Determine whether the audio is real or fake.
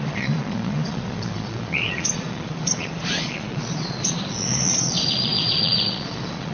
fake